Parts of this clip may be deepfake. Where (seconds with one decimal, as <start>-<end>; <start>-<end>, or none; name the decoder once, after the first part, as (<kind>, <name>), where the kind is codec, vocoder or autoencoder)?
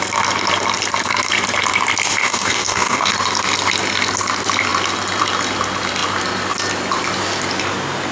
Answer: 2.1-3.1 (codec, DAC)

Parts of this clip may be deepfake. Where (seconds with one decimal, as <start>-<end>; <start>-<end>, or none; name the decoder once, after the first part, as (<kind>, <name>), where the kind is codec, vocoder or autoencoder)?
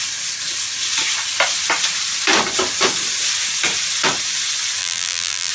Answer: 4.8-5.5 (vocoder, BigVGAN v2)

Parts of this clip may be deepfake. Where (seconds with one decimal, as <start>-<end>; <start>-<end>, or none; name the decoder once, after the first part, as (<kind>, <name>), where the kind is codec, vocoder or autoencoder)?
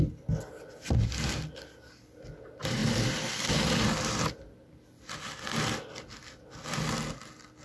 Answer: none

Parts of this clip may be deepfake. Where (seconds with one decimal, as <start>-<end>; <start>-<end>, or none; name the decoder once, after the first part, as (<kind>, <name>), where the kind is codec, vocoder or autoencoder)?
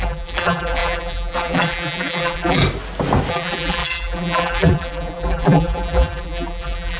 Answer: 0.0-2.6 (vocoder, BigVGAN v2); 3.3-7.0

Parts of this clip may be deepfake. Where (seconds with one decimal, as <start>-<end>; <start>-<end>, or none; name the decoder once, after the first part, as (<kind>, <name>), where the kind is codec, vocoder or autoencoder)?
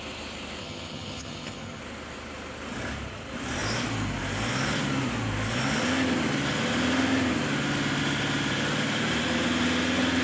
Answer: 0.6-1.8 (vocoder, HiFi-GAN)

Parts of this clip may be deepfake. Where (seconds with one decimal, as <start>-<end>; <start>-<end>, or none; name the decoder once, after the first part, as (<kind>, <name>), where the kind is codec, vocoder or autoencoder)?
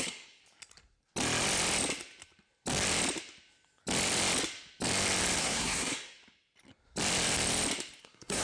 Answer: 0.0-0.4 (codec, SNAC); 5.4-6.2; 8.0-8.4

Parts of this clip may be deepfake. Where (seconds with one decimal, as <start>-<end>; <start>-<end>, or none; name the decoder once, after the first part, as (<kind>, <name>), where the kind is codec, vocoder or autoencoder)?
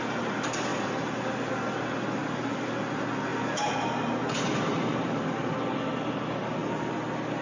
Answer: 0.7-1.5 (vocoder, BigVGAN v2); 2.2-2.7; 3.3-5.5